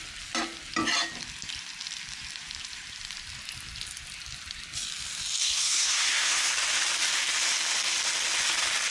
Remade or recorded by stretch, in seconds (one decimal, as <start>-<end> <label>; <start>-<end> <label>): 0.0-5.4 recorded; 5.4-6.5 remade; 6.5-8.9 recorded